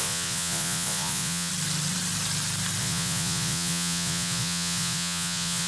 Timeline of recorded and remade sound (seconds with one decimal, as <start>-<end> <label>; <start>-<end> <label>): 0.0-1.5 remade; 1.5-2.8 recorded; 2.8-5.7 remade